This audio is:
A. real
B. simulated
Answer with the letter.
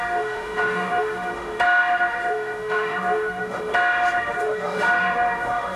B